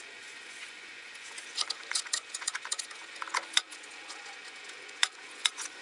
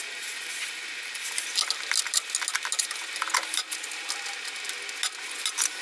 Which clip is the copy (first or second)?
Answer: first